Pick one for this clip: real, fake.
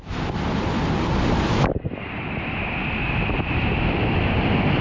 real